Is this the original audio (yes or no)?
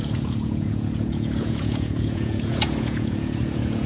no